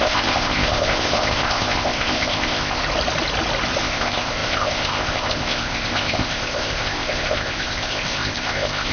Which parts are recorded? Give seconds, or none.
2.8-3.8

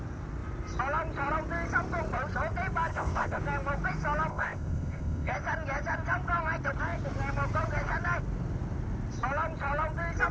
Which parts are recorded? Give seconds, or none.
0.0-2.9; 3.4-4.3; 5.3-10.3